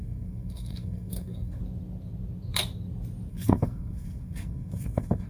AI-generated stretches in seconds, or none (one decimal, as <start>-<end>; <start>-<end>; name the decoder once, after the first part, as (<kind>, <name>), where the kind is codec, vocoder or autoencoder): 0.0-1.6 (codec, SNAC); 3.3-5.3